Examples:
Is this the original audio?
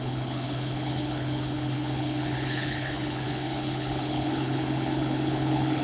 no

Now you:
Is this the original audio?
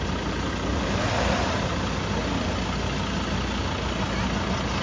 yes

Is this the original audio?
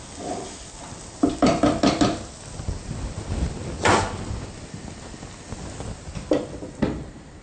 yes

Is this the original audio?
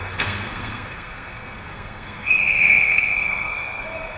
no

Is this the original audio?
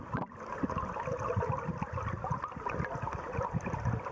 yes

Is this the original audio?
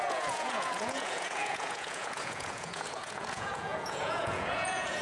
no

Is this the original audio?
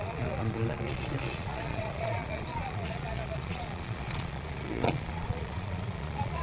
no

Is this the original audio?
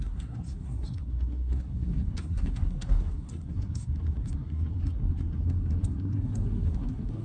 no